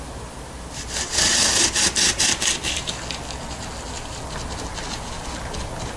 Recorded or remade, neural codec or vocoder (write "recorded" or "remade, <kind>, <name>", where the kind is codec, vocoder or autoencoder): recorded